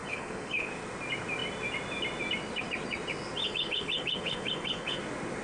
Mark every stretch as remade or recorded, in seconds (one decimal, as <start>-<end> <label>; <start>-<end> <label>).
0.0-0.7 remade; 0.7-3.4 recorded; 3.4-5.0 remade; 5.0-5.4 recorded